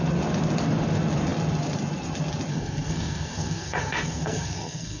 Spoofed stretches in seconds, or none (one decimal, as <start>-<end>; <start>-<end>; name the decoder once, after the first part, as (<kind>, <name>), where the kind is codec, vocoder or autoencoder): 2.5-5.0 (codec, SNAC)